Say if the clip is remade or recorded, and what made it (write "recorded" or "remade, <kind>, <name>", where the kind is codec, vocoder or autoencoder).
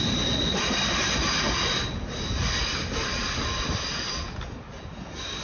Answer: recorded